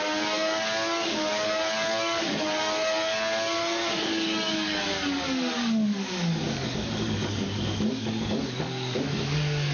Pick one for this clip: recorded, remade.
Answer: remade